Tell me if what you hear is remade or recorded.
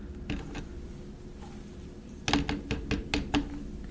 recorded